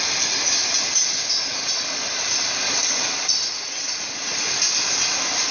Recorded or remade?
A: recorded